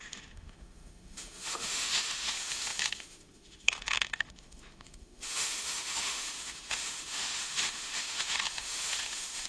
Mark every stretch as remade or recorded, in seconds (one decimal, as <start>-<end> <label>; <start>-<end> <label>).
0.0-9.5 remade